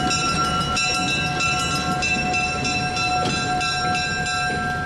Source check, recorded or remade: recorded